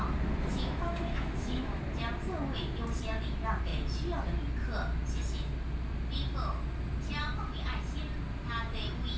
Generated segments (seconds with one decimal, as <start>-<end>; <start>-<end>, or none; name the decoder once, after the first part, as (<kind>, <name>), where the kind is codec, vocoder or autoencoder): 0.5-1.8 (autoencoder, DAC-VAE)